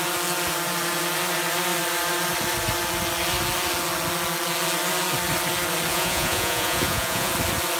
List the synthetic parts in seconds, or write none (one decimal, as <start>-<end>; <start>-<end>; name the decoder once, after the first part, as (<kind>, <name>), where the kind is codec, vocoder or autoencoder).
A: 5.9-7.3 (vocoder, Vocos)